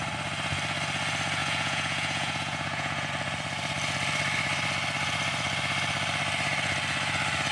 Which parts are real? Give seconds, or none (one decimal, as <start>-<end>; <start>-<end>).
0.0-1.4; 3.1-7.5